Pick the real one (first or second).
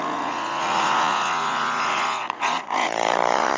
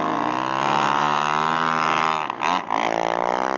second